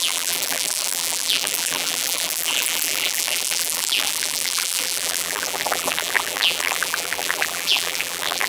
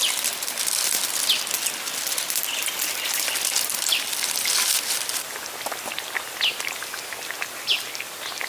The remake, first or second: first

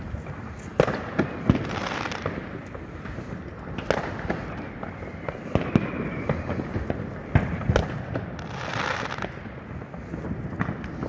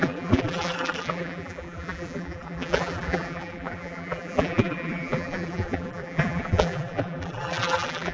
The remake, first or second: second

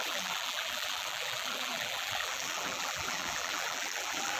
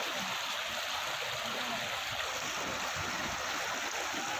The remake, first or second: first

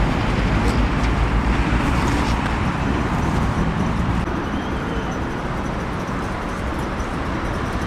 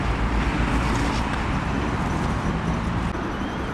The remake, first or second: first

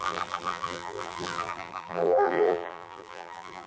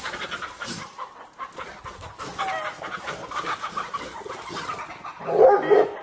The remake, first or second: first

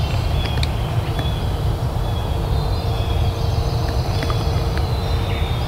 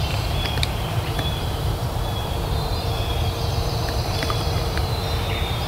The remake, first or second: second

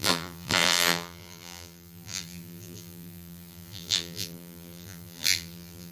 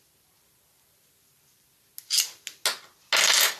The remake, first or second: first